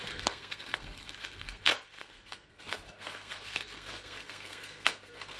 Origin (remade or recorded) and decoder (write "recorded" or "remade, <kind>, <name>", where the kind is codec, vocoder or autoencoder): remade, codec, SNAC